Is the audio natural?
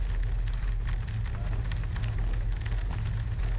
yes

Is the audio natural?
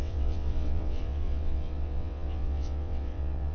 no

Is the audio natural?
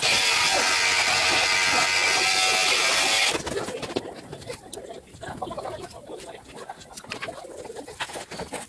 yes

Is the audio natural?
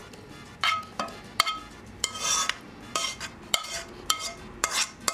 no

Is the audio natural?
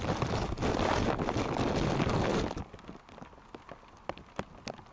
yes